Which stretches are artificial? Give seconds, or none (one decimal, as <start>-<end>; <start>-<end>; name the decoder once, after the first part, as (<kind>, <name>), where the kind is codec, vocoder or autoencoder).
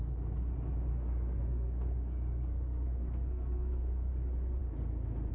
0.9-4.1 (codec, SNAC)